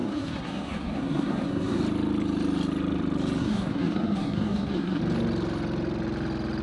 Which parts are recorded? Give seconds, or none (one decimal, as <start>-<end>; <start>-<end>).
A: 1.8-3.4; 5.0-6.6

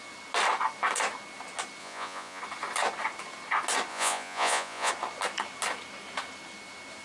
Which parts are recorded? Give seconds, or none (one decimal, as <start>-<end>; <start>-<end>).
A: 0.0-1.8; 2.4-3.9; 4.9-7.0

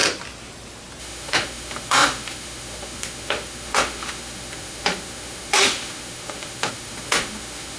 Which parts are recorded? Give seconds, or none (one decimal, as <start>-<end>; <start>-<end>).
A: 0.0-1.0

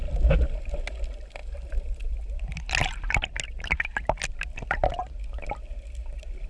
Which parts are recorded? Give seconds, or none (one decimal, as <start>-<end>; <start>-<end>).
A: 0.0-6.5

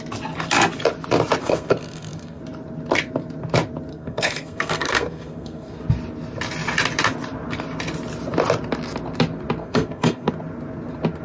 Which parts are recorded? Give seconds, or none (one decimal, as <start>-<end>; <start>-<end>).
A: 0.0-1.4; 2.4-3.9; 5.8-9.6; 10.3-11.2

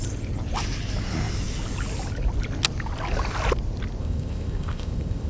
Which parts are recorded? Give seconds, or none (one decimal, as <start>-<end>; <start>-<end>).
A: 0.0-4.0

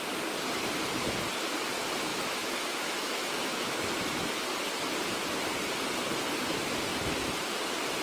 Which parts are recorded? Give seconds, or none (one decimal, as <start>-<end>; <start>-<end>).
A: 0.0-2.1; 4.3-8.0

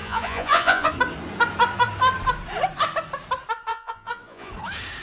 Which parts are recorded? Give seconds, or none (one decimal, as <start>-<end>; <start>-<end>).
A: 0.9-3.7; 4.5-5.0